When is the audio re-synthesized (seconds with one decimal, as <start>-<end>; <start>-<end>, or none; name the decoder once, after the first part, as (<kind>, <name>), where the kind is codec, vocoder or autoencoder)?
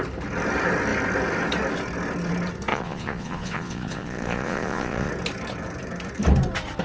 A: 2.7-5.1 (vocoder, Vocos)